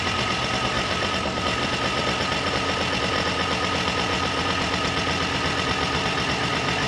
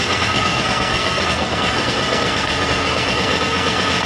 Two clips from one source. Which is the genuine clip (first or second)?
first